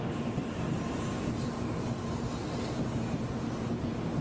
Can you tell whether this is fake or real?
real